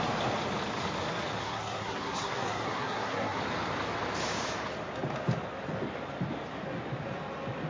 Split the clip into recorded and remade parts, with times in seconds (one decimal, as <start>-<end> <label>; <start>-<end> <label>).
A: 0.0-1.4 recorded; 1.4-3.4 remade; 3.4-7.7 recorded